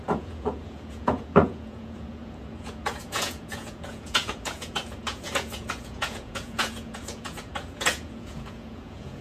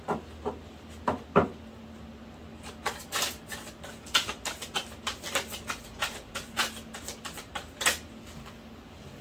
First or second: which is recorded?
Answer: second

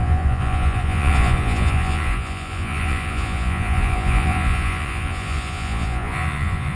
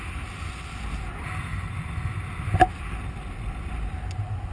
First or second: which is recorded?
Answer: second